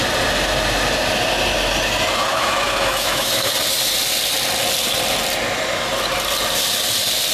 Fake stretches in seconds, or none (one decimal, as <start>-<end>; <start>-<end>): 2.3-3.5